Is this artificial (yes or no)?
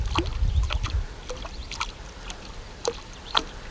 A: no